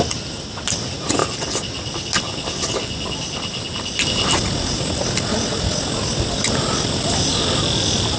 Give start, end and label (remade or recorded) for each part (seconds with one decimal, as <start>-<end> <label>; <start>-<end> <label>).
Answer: 0.0-8.2 recorded